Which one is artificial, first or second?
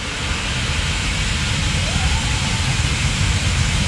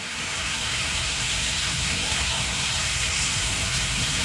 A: second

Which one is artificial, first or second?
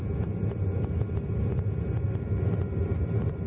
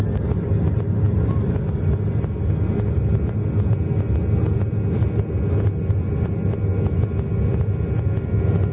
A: first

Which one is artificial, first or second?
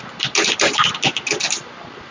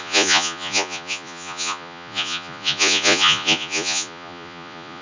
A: second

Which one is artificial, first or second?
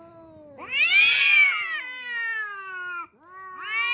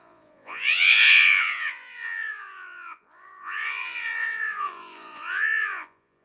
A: second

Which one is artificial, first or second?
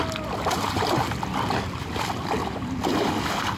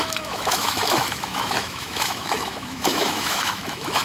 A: second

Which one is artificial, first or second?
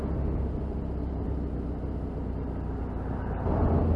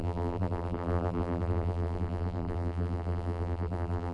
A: second